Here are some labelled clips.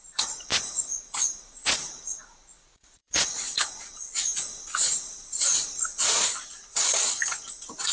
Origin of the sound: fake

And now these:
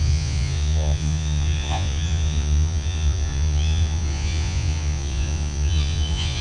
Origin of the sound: fake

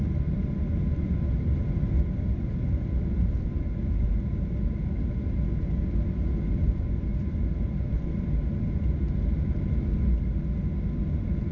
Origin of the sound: real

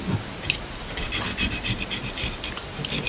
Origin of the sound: real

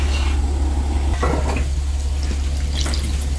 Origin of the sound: real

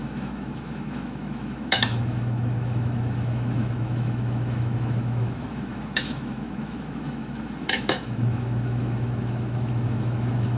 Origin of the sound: fake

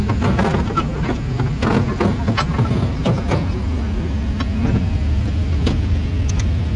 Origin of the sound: real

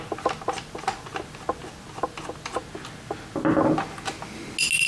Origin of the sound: real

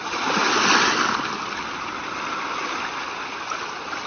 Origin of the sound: real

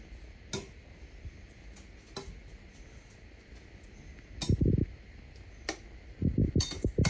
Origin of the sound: real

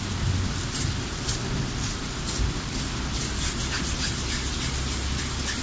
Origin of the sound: real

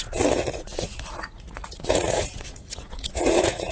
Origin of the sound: fake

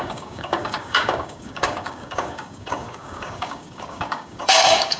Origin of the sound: fake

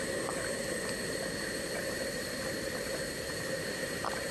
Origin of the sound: real